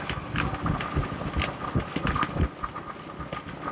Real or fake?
real